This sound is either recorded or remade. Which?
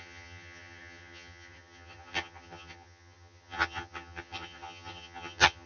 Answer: remade